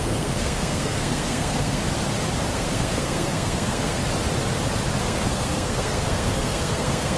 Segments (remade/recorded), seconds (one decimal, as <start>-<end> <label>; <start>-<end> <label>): 0.0-1.8 remade; 1.8-2.5 recorded; 2.5-4.0 remade; 4.0-5.0 recorded; 5.0-7.2 remade